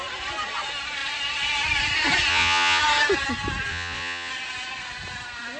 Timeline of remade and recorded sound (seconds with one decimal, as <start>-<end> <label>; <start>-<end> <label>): 0.0-2.3 recorded; 2.3-2.8 remade; 2.8-3.7 recorded; 3.7-4.3 remade; 4.3-5.6 recorded